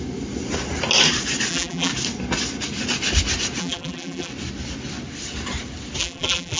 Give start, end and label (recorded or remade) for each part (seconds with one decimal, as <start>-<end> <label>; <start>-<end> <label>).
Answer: 0.0-1.5 recorded; 1.5-1.9 remade; 1.9-3.6 recorded; 3.6-4.3 remade; 4.3-6.0 recorded; 6.0-6.6 remade